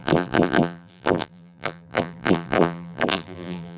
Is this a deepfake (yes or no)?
yes